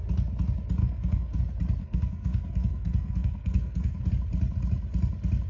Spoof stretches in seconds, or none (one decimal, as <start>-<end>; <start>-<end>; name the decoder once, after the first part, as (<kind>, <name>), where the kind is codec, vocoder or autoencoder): 0.8-1.4 (codec, SNAC); 1.8-4.1